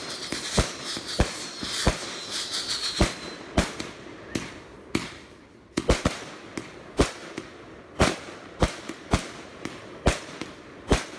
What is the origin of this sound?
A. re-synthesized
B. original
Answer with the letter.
B